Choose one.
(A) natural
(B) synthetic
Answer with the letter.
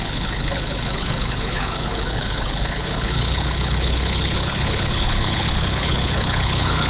B